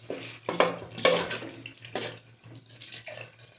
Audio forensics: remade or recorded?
recorded